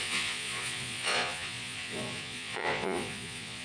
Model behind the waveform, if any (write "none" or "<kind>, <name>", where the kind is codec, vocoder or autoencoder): vocoder, Vocos